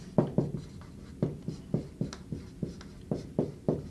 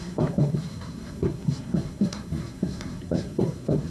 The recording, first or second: first